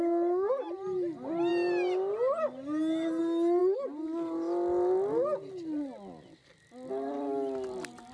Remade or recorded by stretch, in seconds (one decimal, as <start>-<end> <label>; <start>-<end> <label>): 0.0-8.1 recorded